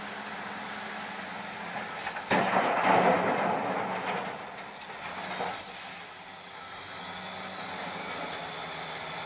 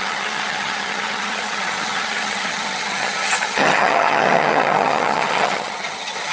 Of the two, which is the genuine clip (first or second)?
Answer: first